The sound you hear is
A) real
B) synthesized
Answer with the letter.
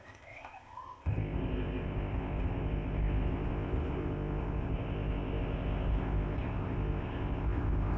B